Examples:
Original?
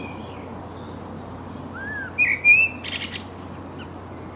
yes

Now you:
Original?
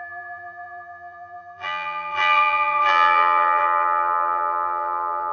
no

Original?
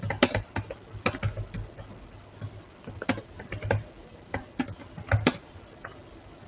yes